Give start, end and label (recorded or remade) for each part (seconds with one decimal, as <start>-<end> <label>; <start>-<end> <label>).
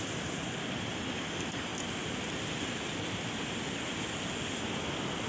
0.0-5.3 recorded